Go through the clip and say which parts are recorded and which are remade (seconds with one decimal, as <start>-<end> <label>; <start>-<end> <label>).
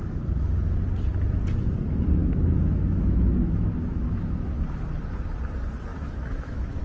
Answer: 0.0-2.2 recorded; 2.2-4.5 remade; 4.5-5.9 recorded; 5.9-6.8 remade